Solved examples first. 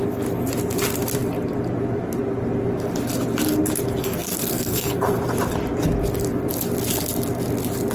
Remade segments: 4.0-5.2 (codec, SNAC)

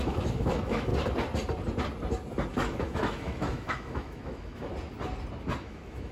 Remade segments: 0.0-0.9 (autoencoder, DAC-VAE); 2.5-4.7; 5.6-6.1

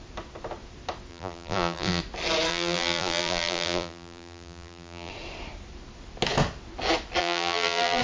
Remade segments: 1.1-2.0 (vocoder, BigVGAN v2); 2.5-5.1; 7.2-8.0

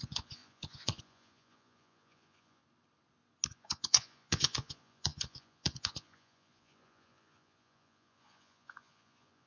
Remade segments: 0.0-2.6 (vocoder, Vocos); 3.5-9.5

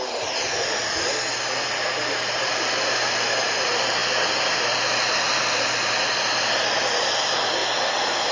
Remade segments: 0.0-0.8 (vocoder, BigVGAN v2); 1.7-4.0; 5.1-7.6